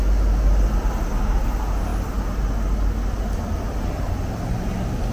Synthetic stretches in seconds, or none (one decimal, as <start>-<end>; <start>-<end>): none